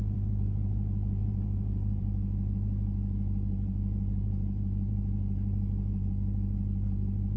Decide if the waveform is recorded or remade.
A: remade